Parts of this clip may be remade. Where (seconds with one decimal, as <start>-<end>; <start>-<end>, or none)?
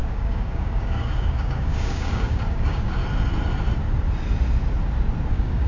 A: 0.0-3.0; 5.3-5.7